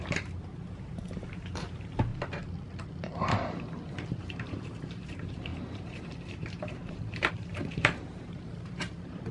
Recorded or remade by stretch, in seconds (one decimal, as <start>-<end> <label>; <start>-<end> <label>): 0.0-2.1 remade; 2.1-4.1 recorded; 4.1-9.3 remade